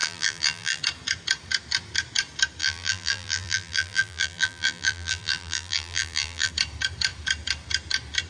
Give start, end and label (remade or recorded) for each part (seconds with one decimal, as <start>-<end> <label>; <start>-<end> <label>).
0.0-0.8 remade; 0.8-2.6 recorded; 2.6-6.5 remade; 6.5-8.3 recorded